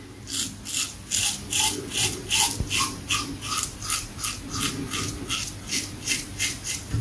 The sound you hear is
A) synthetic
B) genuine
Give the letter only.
B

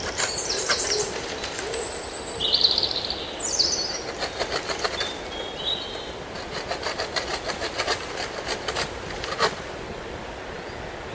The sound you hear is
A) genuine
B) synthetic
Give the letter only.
A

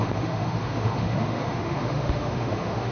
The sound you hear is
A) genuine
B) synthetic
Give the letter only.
B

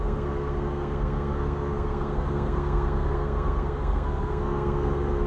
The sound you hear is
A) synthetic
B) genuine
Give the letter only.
A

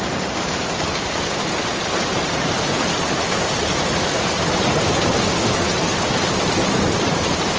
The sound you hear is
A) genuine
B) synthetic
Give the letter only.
B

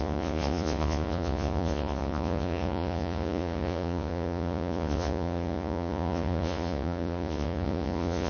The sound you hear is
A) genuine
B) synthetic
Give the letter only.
B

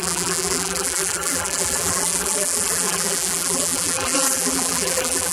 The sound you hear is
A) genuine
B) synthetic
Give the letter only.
B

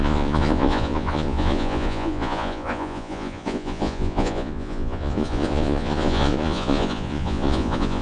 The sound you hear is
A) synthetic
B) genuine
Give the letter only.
A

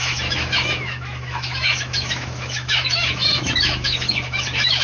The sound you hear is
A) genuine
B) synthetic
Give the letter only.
B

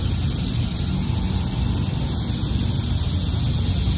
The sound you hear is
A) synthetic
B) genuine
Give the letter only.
B